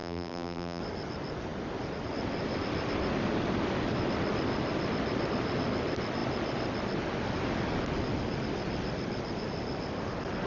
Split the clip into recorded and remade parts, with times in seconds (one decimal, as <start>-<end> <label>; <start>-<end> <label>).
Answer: 0.0-0.8 remade; 0.8-10.5 recorded